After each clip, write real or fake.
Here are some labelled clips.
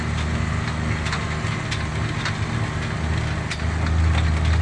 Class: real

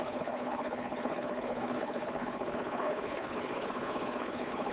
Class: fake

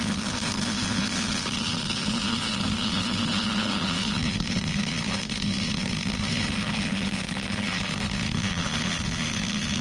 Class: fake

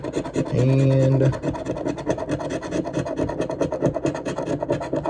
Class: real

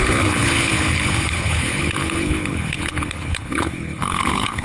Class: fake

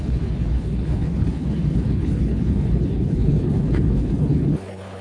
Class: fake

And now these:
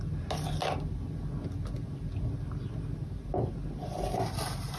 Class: real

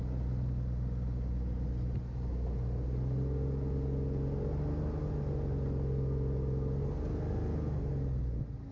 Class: real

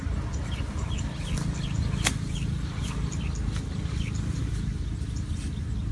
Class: real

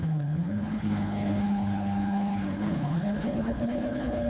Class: fake